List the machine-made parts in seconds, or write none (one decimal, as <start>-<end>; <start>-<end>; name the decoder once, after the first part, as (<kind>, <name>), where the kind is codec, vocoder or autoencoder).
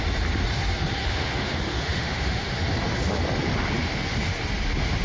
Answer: 1.0-2.4 (autoencoder, DAC-VAE)